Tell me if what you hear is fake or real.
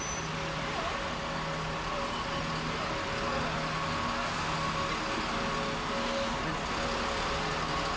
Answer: real